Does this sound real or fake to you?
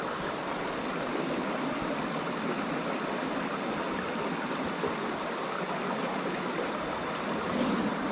real